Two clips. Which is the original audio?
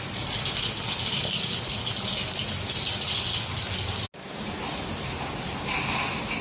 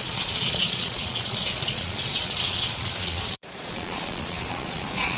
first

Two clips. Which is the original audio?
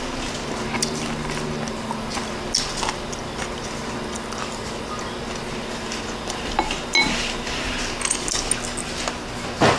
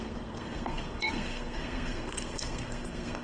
first